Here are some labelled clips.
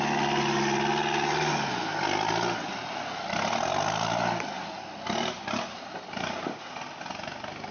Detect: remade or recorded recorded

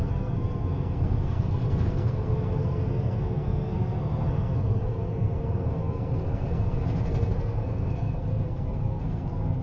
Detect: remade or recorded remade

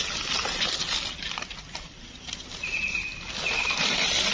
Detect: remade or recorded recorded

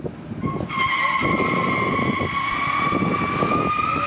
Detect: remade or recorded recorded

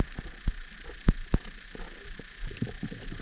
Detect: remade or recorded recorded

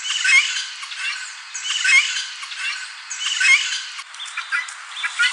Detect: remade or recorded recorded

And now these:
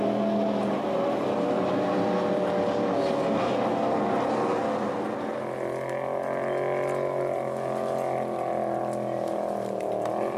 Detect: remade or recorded recorded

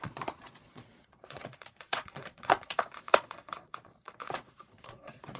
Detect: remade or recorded remade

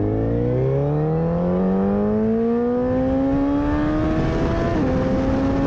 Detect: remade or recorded recorded